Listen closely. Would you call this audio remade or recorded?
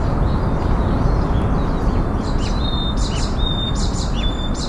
recorded